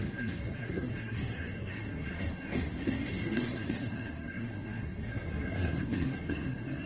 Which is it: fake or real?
fake